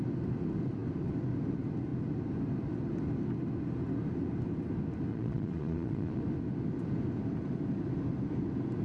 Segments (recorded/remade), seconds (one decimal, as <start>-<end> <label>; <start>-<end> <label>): 0.0-5.1 recorded; 5.1-6.2 remade; 6.2-8.8 recorded